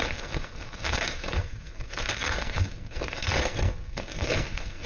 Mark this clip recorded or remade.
remade